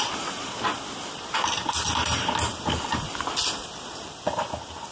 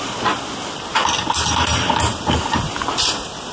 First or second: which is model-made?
first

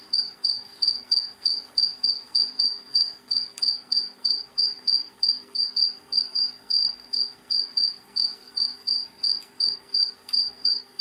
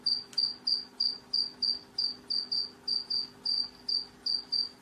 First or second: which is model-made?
first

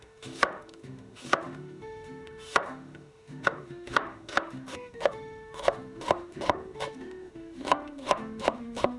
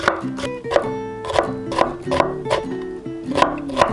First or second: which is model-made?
first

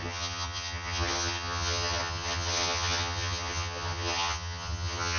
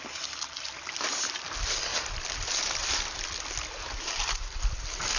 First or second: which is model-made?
first